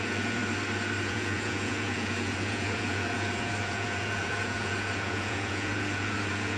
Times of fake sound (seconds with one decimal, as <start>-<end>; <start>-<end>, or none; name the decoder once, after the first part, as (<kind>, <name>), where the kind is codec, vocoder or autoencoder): 0.0-0.4 (vocoder, Vocos); 1.0-6.6